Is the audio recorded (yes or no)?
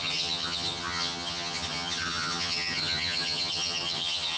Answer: no